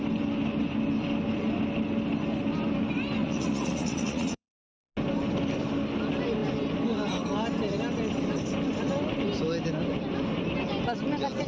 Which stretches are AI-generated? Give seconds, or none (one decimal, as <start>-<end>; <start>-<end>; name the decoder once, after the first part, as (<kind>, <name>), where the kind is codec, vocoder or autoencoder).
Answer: 3.2-4.9 (vocoder, Vocos)